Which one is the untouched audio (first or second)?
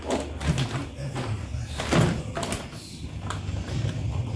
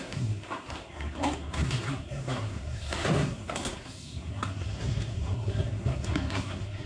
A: first